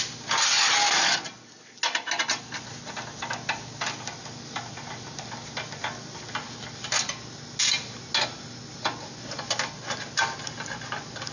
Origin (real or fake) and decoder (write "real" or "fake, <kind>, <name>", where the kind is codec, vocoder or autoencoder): real